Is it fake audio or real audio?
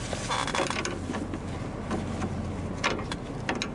real